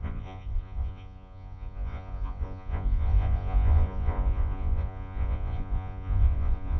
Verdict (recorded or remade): remade